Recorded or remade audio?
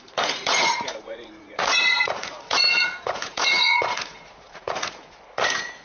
remade